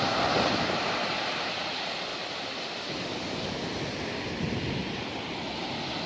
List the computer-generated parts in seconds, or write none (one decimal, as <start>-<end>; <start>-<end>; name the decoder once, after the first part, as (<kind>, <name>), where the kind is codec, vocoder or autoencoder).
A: none